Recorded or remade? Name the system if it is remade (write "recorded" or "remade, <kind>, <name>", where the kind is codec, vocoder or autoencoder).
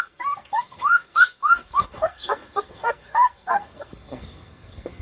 remade, codec, SNAC